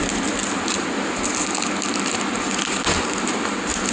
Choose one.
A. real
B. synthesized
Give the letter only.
A